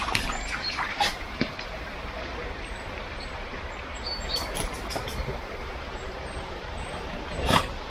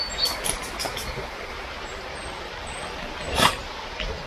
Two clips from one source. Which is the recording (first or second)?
second